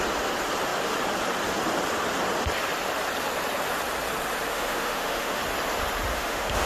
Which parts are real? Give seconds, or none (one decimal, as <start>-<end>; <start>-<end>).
0.0-4.5; 5.4-6.1